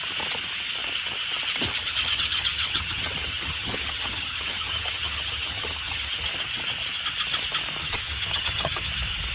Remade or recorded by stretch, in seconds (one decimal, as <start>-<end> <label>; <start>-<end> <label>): 0.0-1.7 recorded; 1.7-6.1 remade; 6.1-7.8 recorded; 7.8-8.9 remade; 8.9-9.3 recorded